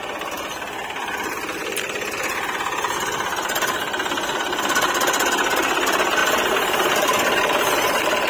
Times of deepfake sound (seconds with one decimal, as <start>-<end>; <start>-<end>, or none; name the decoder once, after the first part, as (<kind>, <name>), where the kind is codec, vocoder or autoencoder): 6.2-8.3 (vocoder, BigVGAN v2)